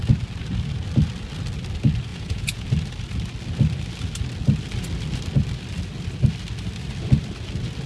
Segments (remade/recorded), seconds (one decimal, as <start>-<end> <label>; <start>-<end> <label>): 0.0-2.1 recorded; 2.1-2.7 remade; 2.7-7.9 recorded